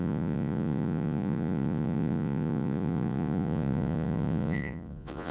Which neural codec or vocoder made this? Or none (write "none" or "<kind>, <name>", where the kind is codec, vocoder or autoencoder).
vocoder, Vocos